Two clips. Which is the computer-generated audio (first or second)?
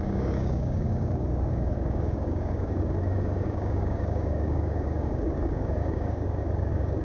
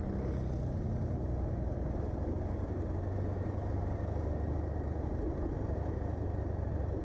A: first